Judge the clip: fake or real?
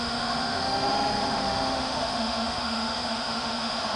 fake